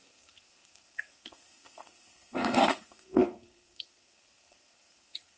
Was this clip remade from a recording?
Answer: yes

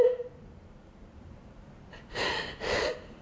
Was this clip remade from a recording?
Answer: yes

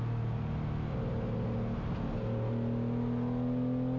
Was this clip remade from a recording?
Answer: no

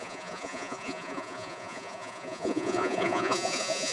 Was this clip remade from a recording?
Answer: yes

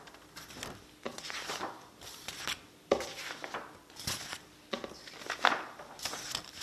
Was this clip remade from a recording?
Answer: no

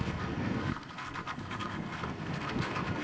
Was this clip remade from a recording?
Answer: yes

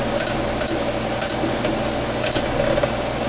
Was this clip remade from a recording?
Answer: no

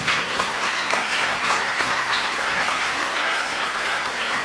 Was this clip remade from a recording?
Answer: yes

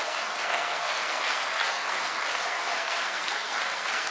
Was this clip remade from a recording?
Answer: yes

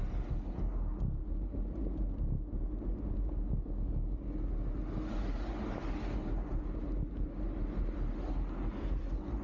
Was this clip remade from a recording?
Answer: no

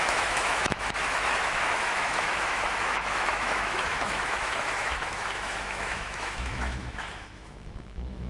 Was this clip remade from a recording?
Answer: yes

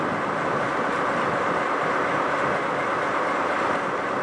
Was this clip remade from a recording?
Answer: no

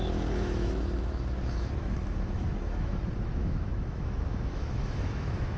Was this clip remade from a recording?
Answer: yes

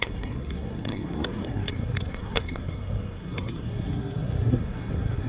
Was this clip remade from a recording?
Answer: yes